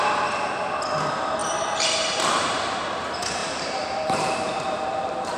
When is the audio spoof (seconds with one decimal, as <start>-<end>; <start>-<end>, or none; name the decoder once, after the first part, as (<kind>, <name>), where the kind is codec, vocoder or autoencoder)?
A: 1.4-2.9 (vocoder, BigVGAN v2); 3.4-5.4